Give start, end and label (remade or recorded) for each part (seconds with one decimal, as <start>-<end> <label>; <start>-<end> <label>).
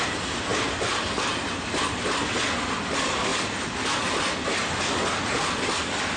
0.0-6.2 recorded